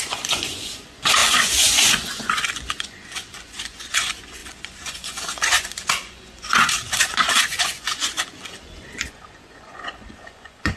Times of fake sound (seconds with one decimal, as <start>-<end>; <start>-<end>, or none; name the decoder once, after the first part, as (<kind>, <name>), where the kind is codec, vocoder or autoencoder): 0.0-10.8 (vocoder, Vocos)